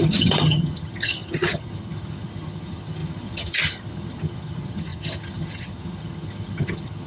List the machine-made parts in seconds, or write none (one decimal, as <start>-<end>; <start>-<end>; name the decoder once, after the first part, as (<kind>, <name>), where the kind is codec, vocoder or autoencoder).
0.0-7.1 (vocoder, HiFi-GAN)